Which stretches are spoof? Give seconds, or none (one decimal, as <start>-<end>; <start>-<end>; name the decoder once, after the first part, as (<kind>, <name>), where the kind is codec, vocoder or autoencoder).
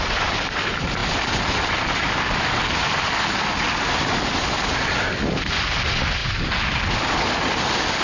none